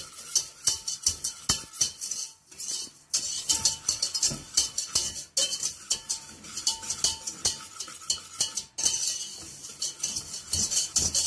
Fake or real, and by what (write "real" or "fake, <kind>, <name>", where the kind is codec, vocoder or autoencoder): real